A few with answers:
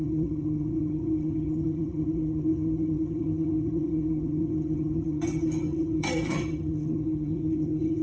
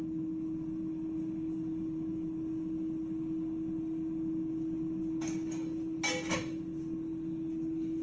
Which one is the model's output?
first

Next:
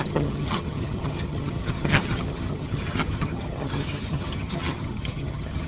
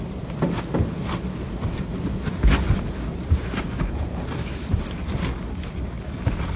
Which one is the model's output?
first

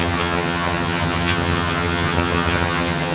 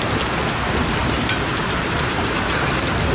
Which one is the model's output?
first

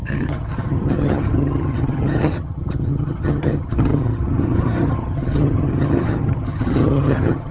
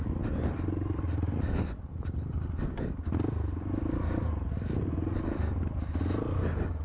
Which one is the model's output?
first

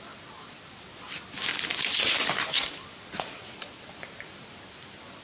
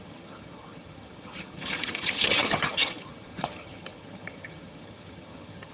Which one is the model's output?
second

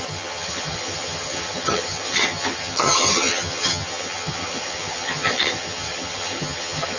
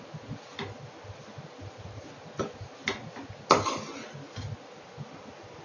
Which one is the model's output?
first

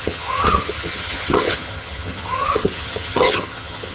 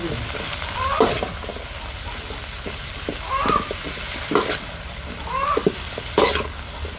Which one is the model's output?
first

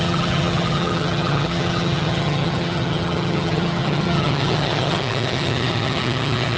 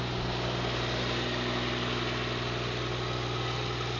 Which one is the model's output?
first